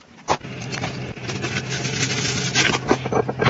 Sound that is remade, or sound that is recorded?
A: remade